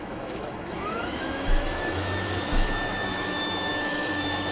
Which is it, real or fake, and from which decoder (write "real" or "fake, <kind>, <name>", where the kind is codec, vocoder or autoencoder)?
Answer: fake, autoencoder, DAC-VAE